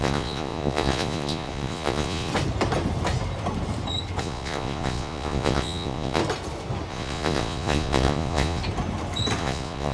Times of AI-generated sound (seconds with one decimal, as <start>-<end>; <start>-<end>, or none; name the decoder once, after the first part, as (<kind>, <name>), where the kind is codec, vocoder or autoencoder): 0.0-2.3 (vocoder, Vocos); 4.2-6.2; 6.9-8.6; 9.4-9.9